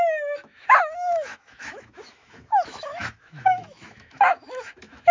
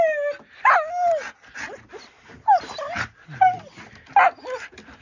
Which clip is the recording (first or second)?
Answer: second